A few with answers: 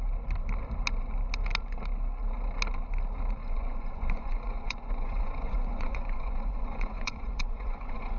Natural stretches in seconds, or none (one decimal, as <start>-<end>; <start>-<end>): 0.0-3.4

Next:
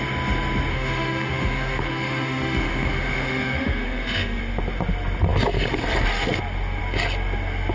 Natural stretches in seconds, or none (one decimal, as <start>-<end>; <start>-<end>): 0.0-0.7; 4.4-7.7

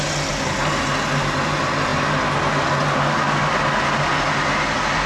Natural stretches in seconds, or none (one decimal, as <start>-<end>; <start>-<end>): 0.0-5.1

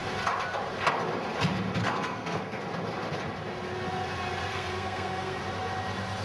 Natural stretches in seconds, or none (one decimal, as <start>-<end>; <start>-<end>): 0.0-1.8; 2.6-4.5; 5.4-6.2

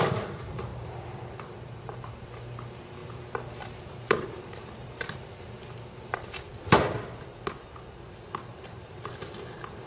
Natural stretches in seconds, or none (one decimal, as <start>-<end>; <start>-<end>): 6.5-8.5